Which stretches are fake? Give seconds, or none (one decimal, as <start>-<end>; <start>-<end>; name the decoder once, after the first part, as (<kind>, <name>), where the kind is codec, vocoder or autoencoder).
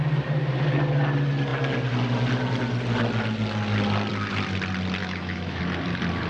5.0-5.6 (autoencoder, DAC-VAE)